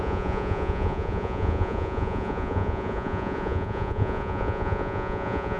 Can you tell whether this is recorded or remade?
remade